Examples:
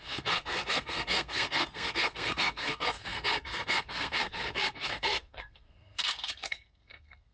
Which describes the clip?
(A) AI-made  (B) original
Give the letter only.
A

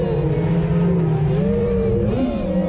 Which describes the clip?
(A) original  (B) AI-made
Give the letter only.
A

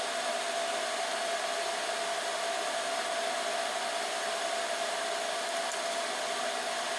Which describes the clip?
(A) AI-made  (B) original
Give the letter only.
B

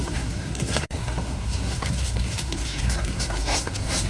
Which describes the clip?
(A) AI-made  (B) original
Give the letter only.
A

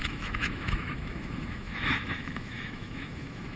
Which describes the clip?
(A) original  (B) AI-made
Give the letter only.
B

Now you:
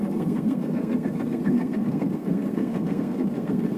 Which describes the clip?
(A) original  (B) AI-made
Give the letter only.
B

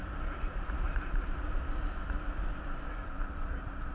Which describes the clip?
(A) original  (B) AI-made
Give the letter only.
B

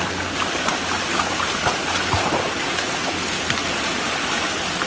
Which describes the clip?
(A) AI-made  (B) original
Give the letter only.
B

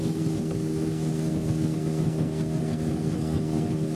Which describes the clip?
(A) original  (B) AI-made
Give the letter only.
B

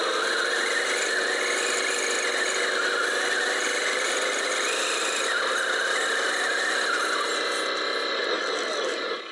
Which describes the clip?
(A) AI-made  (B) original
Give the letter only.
B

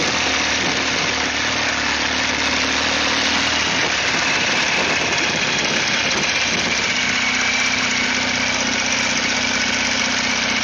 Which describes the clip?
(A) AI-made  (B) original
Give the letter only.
B